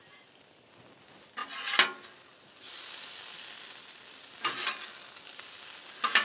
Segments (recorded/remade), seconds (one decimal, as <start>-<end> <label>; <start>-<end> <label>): 0.0-6.2 recorded